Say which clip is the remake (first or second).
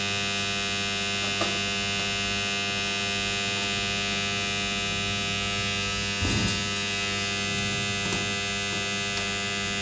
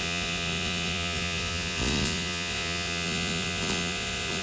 second